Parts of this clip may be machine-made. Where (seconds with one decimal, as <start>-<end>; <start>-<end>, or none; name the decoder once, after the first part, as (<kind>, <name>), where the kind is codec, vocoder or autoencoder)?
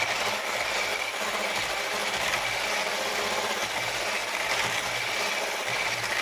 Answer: none